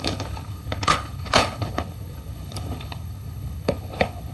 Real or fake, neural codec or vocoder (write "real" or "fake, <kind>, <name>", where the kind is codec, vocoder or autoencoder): fake, codec, HILCodec